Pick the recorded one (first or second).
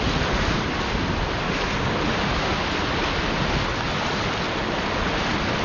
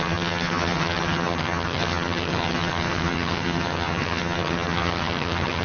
first